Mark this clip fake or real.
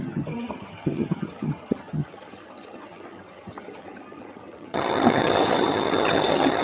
fake